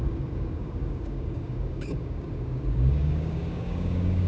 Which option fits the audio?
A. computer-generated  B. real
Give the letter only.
A